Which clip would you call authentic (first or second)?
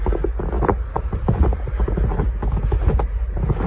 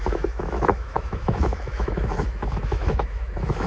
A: first